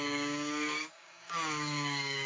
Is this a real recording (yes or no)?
no